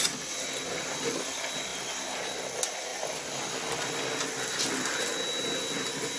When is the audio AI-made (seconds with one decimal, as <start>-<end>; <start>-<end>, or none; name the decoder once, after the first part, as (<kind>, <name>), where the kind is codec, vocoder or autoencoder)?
none